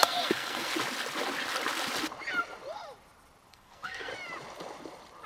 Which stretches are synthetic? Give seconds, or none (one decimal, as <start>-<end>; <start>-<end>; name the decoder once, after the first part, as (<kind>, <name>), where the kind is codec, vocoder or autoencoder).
0.0-0.7 (codec, SNAC); 3.5-4.1